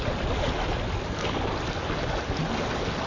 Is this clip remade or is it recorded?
recorded